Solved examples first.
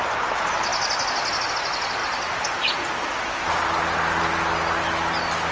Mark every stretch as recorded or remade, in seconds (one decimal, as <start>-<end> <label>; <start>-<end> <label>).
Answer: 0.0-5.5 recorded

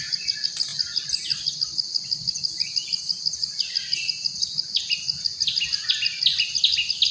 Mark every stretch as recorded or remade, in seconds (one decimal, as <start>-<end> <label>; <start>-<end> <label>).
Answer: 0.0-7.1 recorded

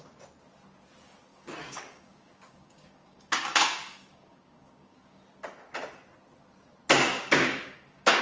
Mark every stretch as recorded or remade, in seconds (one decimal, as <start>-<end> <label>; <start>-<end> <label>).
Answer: 0.0-1.3 recorded; 1.3-5.2 remade; 5.2-7.1 recorded; 7.1-8.2 remade

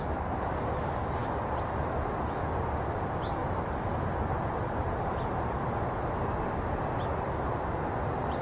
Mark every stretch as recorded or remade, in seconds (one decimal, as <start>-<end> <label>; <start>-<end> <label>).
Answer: 0.0-8.4 recorded

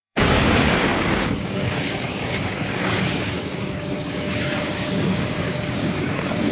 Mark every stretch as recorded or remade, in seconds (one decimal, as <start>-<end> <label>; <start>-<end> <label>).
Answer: 0.0-6.5 remade